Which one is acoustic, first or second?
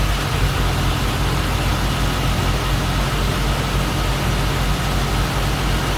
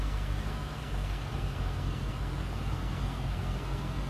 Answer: first